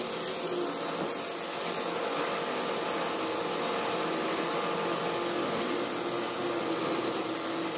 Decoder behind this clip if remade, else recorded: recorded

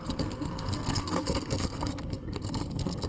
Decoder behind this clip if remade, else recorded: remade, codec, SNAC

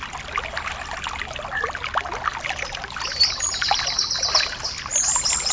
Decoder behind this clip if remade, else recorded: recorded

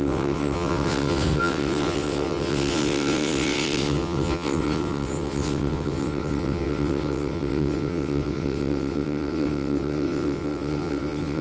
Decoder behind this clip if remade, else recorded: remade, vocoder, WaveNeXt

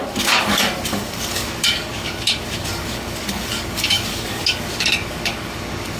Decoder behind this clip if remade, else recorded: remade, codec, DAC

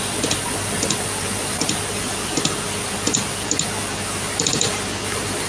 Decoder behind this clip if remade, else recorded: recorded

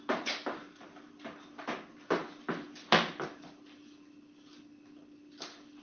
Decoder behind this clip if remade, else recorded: recorded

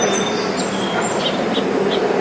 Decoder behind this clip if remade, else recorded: recorded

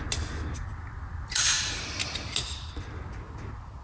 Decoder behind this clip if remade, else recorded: recorded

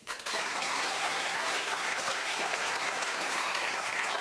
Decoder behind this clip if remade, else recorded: remade, codec, SNAC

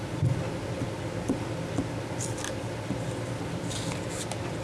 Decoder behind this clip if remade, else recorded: recorded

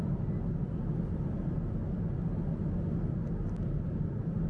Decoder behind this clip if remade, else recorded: recorded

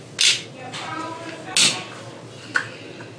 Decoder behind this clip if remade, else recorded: recorded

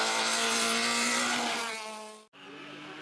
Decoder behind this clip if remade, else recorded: recorded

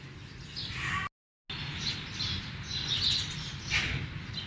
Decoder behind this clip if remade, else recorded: recorded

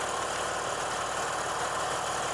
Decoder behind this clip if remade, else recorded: recorded